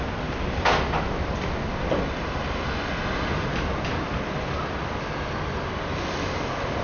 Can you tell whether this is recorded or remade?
recorded